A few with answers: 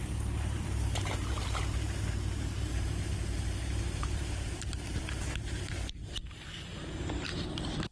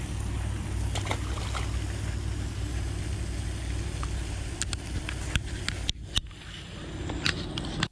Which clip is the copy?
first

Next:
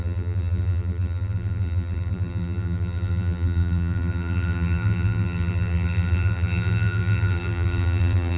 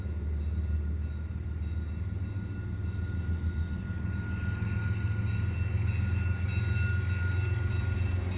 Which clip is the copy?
first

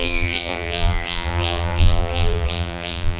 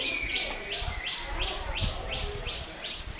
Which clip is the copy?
first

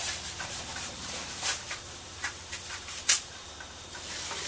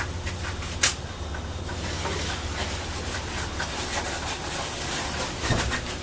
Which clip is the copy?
first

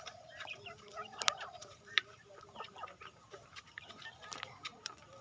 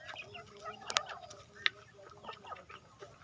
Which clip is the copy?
first